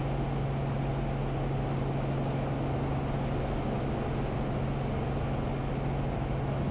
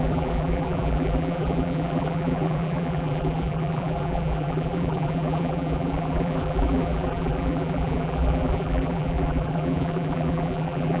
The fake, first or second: second